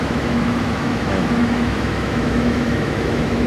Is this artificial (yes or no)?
yes